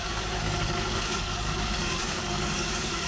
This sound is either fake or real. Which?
fake